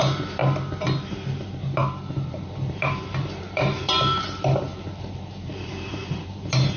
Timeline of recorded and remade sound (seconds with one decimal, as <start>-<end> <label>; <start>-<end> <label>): 0.0-0.4 remade; 0.4-1.1 recorded; 1.1-6.8 remade